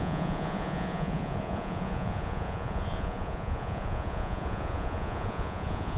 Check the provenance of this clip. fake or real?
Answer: fake